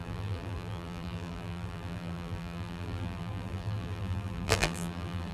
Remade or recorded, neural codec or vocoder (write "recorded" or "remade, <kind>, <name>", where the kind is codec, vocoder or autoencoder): remade, vocoder, BigVGAN v2